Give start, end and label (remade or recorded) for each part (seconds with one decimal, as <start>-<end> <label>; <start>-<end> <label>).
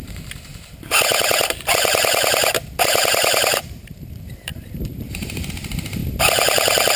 0.0-6.0 remade; 6.0-7.0 recorded